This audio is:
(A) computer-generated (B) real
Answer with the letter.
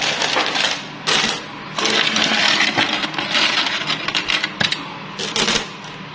B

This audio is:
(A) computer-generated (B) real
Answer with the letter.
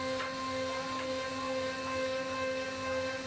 B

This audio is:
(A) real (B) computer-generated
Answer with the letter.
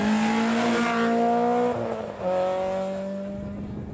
A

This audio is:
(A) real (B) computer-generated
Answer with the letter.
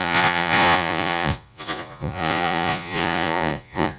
B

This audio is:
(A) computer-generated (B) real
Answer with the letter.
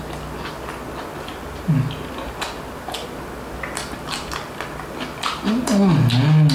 B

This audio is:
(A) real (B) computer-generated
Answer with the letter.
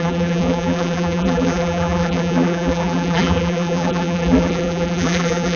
B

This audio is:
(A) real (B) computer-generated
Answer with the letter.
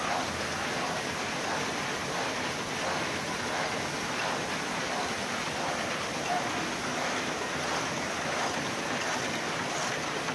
A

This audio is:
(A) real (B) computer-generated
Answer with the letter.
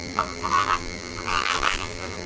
B